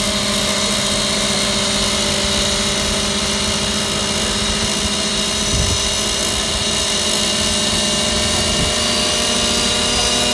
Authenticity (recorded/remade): recorded